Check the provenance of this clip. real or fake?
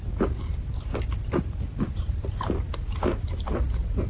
real